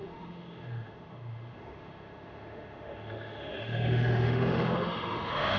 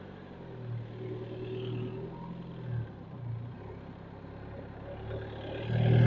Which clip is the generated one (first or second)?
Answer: first